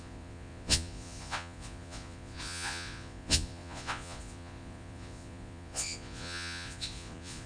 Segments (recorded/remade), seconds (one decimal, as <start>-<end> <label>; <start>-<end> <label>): 0.0-7.5 remade